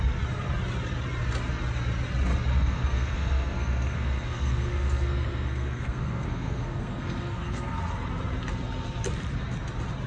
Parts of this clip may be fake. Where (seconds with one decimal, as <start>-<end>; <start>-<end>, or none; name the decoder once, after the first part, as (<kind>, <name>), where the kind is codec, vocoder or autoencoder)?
2.5-7.8 (codec, SNAC)